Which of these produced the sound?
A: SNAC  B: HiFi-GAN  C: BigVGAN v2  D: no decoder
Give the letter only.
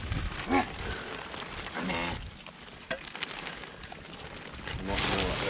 D